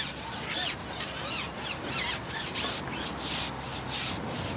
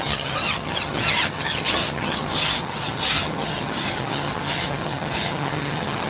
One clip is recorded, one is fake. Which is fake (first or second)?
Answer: second